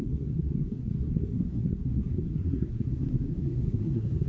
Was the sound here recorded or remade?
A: remade